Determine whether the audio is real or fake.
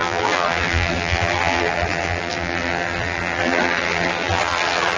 fake